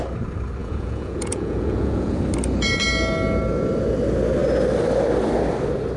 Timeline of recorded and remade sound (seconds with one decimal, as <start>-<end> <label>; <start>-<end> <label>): 0.0-0.6 recorded; 0.6-2.2 remade; 2.2-6.0 recorded

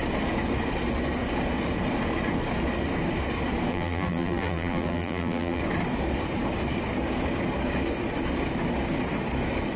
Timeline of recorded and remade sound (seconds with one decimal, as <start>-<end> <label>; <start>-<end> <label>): 0.0-3.7 recorded; 3.7-5.6 remade; 5.6-9.8 recorded

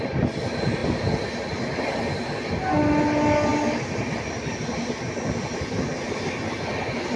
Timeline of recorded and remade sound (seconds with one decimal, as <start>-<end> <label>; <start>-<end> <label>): 0.0-7.2 recorded

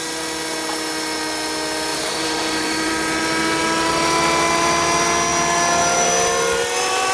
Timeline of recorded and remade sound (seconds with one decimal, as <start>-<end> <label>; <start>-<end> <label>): 0.0-1.9 recorded; 1.9-2.9 remade; 2.9-7.1 recorded